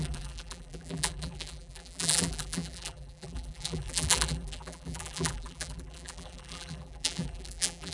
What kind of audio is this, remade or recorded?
remade